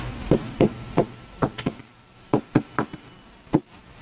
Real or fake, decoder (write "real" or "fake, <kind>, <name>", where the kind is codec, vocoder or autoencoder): real